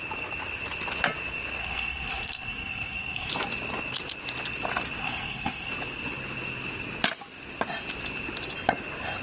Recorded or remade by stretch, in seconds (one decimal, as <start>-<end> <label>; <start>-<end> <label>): 0.0-1.6 recorded; 1.6-3.3 remade; 3.3-5.0 recorded; 5.0-5.7 remade; 5.7-9.2 recorded